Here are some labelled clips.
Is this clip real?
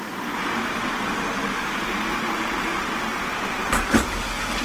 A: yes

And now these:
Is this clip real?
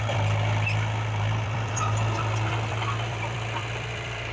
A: no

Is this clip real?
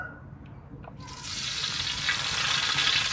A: yes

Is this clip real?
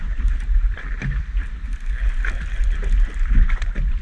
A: yes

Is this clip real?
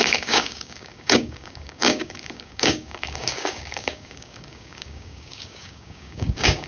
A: no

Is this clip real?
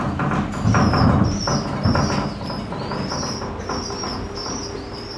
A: yes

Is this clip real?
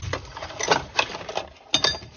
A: yes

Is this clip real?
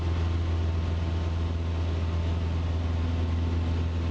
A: yes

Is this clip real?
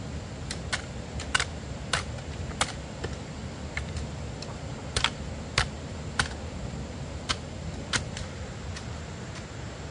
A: yes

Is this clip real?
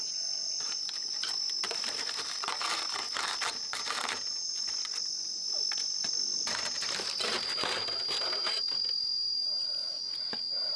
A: yes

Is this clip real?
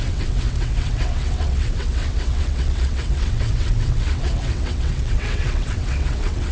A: no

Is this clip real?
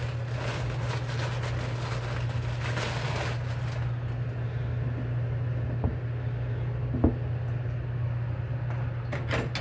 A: yes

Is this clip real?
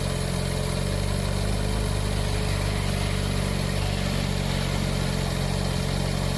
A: yes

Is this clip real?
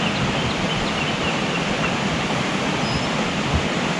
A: yes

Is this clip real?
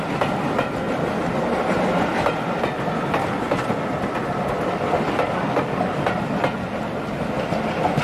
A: yes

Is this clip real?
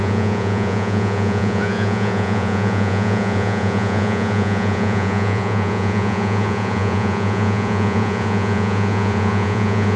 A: no